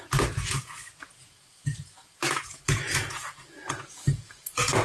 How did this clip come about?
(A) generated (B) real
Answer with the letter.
A